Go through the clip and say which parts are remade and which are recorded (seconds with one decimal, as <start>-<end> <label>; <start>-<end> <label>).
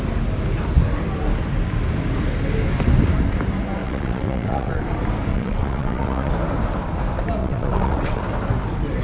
0.0-3.8 recorded; 3.8-4.8 remade; 4.8-5.3 recorded; 5.3-6.3 remade; 6.3-7.4 recorded; 7.4-8.2 remade; 8.2-9.0 recorded